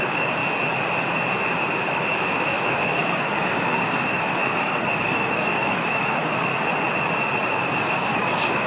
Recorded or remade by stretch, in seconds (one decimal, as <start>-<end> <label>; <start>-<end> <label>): 0.0-0.4 remade; 0.4-1.9 recorded; 1.9-6.5 remade; 6.5-7.5 recorded; 7.5-8.7 remade